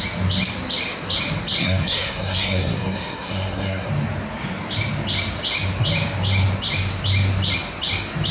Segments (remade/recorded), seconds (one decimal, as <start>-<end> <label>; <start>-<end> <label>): 0.0-1.6 recorded; 1.6-3.9 remade; 3.9-8.3 recorded